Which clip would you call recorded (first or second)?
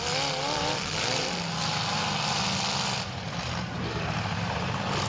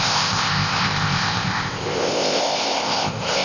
first